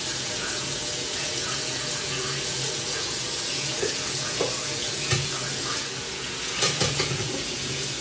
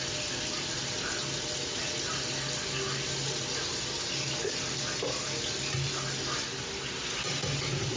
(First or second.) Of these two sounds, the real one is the second